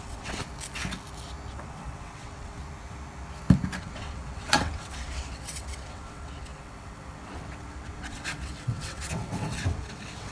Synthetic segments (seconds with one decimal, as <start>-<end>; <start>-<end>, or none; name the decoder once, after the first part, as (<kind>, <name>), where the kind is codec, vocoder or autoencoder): 0.0-0.4 (vocoder, WaveNeXt); 1.5-2.6; 3.8-10.3